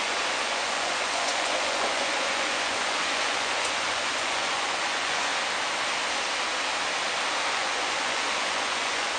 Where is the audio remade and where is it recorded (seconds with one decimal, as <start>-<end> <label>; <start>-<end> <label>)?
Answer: 0.0-5.3 remade; 5.3-7.5 recorded; 7.5-9.2 remade